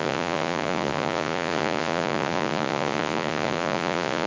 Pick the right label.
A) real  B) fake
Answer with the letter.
B